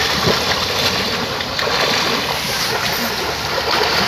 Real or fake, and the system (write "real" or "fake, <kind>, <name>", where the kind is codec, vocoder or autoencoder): real